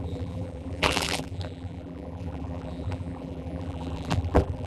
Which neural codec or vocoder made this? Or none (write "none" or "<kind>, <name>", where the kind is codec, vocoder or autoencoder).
vocoder, BigVGAN v2